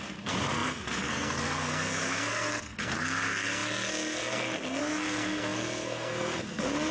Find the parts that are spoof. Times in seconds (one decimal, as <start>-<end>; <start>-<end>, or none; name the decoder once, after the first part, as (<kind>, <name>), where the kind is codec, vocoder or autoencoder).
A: 0.0-6.9 (codec, SNAC)

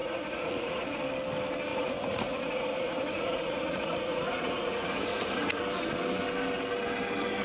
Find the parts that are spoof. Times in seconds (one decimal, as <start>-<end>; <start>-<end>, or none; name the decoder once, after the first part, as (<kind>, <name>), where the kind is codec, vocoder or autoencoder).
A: 0.0-1.0 (vocoder, Vocos); 1.7-5.6

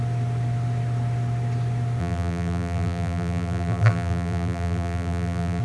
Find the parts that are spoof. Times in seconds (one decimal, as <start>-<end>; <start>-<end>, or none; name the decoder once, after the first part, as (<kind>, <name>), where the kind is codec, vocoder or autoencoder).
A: 2.0-5.6 (vocoder, BigVGAN v2)

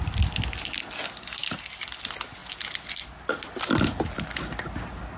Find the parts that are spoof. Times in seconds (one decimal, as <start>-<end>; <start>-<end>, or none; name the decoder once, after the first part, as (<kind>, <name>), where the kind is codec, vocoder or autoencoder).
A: none

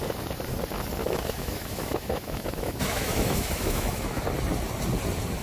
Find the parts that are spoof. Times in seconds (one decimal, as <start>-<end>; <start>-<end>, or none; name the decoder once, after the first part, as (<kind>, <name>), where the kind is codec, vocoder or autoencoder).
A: 1.0-4.2 (autoencoder, DAC-VAE)